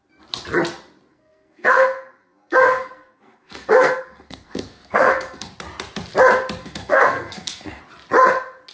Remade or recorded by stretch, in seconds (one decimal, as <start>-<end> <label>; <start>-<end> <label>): 0.0-1.1 recorded; 1.1-5.5 remade; 5.5-6.6 recorded; 6.6-7.8 remade; 7.8-8.7 recorded